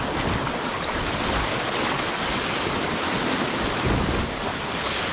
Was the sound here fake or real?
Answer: real